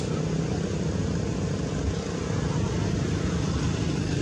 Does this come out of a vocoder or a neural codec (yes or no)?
no